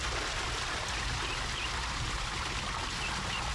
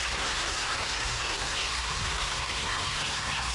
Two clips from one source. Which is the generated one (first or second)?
second